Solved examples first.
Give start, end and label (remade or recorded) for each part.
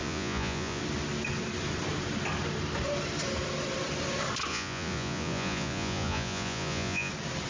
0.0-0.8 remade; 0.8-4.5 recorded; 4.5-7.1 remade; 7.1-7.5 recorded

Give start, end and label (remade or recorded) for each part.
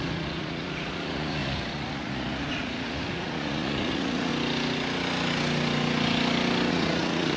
0.0-4.3 remade; 4.3-6.7 recorded; 6.7-7.4 remade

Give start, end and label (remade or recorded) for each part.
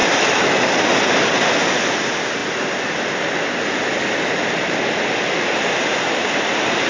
0.0-6.9 recorded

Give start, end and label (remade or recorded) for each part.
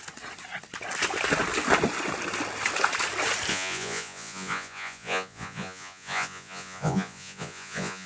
0.0-3.5 recorded; 3.5-8.1 remade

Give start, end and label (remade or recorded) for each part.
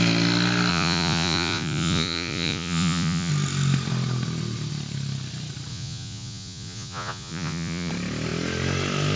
0.0-0.7 recorded; 0.7-3.3 remade; 3.3-5.7 recorded; 5.7-7.9 remade; 7.9-9.2 recorded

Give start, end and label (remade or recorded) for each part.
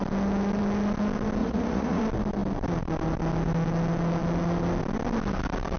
0.0-1.4 recorded; 1.4-2.0 remade; 2.0-5.8 recorded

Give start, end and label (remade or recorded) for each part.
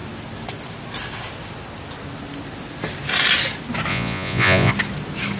0.0-3.9 recorded; 3.9-4.7 remade; 4.7-5.4 recorded